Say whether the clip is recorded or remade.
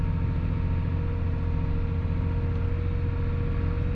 recorded